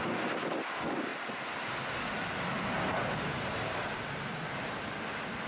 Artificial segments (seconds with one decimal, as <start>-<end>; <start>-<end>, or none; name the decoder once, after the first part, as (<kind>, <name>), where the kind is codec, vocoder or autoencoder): none